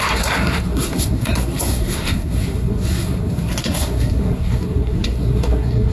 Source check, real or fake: fake